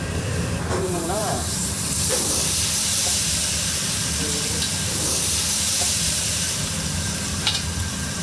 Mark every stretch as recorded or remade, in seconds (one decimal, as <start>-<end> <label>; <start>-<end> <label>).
0.0-3.4 remade; 3.4-4.8 recorded; 4.8-8.2 remade